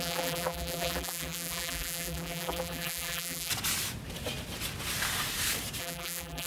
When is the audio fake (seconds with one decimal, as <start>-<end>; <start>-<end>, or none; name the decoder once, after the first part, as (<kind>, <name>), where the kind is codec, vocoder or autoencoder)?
0.0-3.5 (vocoder, BigVGAN v2); 5.8-6.5